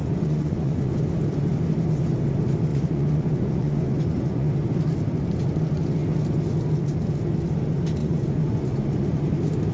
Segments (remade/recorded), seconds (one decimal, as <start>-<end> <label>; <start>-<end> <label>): 0.0-0.9 remade; 0.9-2.7 recorded; 2.7-4.5 remade; 4.5-8.0 recorded; 8.0-9.2 remade; 9.2-9.7 recorded